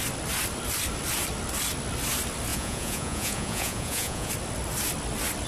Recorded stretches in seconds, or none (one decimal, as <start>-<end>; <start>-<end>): 0.0-2.5; 4.3-5.5